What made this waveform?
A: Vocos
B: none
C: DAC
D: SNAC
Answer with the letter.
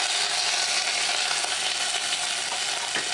B